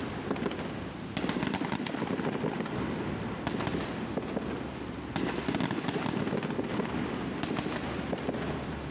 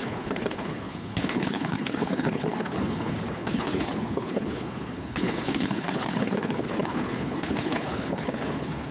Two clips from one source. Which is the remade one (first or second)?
second